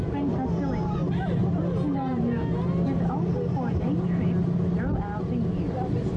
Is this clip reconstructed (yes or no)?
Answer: no